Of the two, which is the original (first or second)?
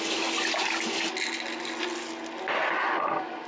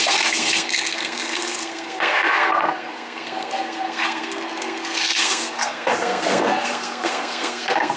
first